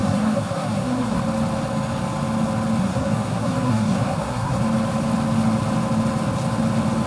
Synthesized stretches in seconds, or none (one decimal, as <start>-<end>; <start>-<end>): 0.0-1.2; 2.8-4.6